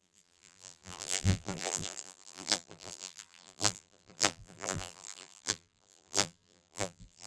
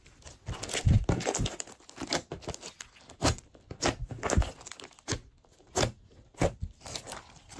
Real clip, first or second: second